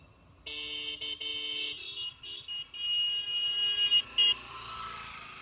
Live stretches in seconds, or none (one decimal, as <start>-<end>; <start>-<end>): 0.0-5.4